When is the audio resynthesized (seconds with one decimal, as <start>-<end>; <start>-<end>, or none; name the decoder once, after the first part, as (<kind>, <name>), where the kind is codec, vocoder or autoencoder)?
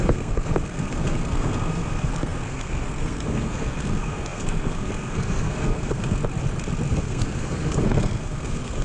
0.0-6.2 (codec, SNAC); 6.9-8.8